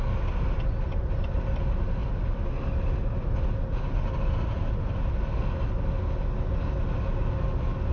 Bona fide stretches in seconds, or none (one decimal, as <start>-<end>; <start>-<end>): 0.0-7.9